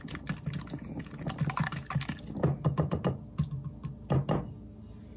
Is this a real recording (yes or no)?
yes